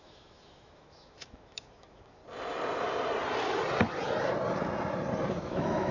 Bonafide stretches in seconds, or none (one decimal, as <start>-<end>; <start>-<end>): 2.2-5.3

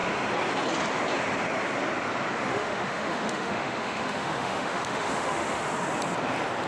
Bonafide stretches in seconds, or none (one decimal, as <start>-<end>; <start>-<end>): 0.0-2.5; 5.6-6.7

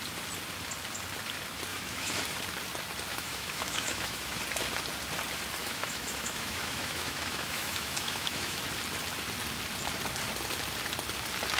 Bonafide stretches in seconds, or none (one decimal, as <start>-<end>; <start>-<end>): 0.0-1.7; 2.2-3.1; 4.4-5.6; 8.6-11.6

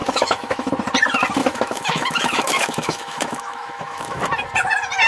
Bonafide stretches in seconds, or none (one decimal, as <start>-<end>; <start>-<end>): 0.7-1.4; 4.2-5.1

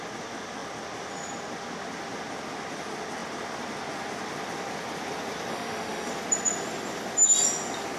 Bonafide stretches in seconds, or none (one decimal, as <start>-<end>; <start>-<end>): 0.0-5.5; 6.1-8.0

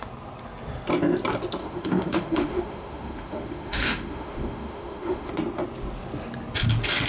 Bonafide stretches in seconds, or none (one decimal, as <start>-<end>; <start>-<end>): 0.0-1.6; 5.3-7.1